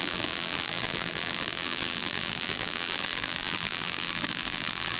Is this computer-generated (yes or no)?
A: yes